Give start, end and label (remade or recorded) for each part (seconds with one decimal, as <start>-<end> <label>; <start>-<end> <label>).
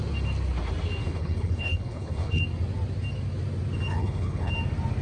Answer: 0.0-1.0 recorded; 1.0-2.4 remade; 2.4-3.9 recorded; 3.9-4.5 remade; 4.5-5.0 recorded